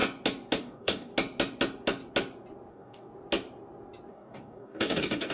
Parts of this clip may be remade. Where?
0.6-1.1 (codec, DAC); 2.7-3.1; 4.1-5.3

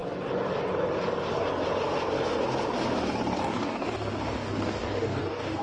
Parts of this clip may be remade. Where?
3.4-5.6 (codec, DAC)